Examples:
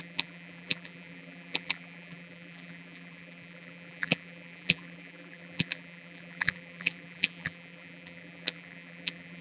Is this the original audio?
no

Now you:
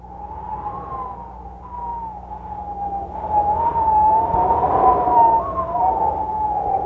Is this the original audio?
yes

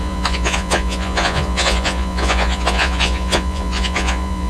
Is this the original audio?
no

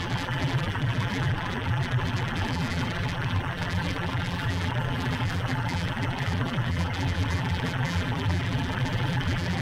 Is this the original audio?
no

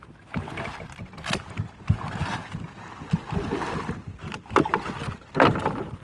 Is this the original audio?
yes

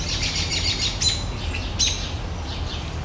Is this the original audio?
yes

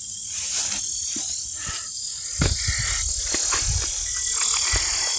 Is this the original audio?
yes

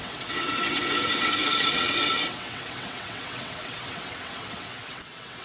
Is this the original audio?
no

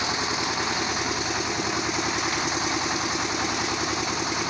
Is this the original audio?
yes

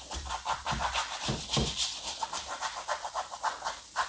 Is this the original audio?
no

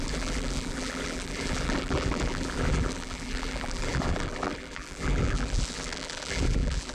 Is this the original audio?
no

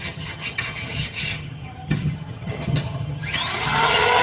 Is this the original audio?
no